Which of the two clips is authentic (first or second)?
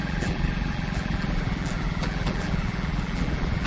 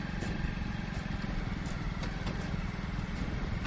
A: second